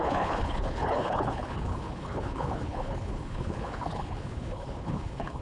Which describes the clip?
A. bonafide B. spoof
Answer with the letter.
B